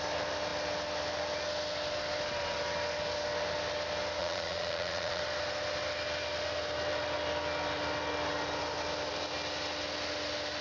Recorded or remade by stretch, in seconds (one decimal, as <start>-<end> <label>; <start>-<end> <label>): 0.0-4.2 recorded; 4.2-5.2 remade; 5.2-10.6 recorded